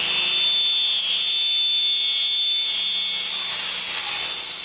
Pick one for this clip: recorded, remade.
recorded